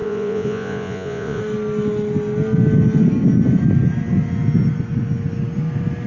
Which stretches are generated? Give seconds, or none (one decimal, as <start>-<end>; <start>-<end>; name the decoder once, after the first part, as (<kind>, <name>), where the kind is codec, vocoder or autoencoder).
0.0-1.4 (vocoder, Vocos)